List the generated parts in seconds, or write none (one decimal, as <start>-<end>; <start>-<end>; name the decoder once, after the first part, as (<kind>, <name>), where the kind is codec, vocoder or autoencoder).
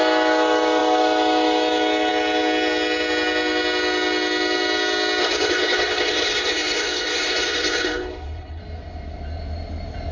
5.2-8.6 (codec, HILCodec)